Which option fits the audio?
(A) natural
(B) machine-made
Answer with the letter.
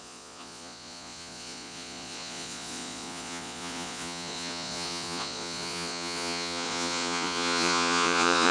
B